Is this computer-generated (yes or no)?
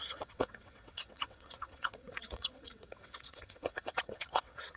yes